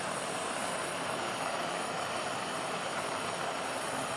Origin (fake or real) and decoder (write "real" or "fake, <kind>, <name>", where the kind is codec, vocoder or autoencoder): real